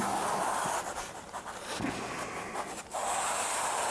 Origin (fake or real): real